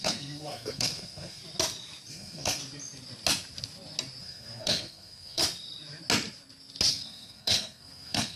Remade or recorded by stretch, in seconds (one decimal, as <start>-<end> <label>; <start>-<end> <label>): 0.0-1.4 remade; 1.4-2.1 recorded; 2.1-2.6 remade; 2.6-4.2 recorded; 4.2-5.4 remade; 5.4-6.9 recorded; 6.9-8.4 remade